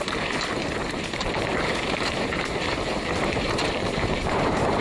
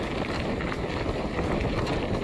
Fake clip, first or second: first